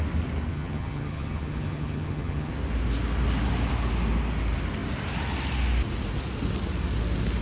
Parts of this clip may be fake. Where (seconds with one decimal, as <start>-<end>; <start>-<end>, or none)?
0.5-2.5